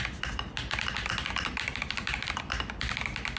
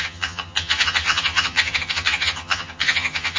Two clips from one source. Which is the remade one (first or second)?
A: second